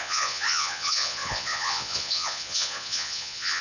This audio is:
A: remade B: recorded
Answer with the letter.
A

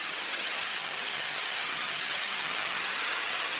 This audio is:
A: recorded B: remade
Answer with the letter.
B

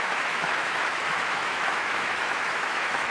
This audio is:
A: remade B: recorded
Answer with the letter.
A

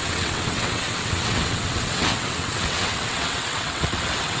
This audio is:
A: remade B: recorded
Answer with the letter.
A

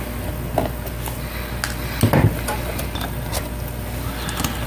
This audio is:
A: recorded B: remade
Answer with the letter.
A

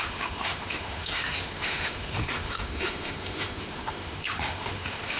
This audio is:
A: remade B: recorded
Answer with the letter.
A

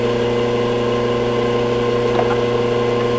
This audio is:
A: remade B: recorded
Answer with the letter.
B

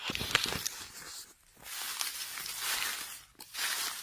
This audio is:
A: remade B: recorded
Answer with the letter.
B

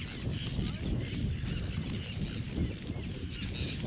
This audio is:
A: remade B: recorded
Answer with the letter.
B